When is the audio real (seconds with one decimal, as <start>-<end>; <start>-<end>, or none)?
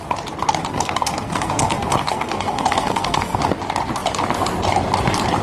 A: 0.0-0.7; 3.4-5.4